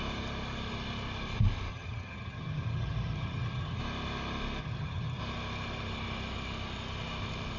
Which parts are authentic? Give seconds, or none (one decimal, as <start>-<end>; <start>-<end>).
0.0-1.7; 3.8-4.6; 5.2-7.6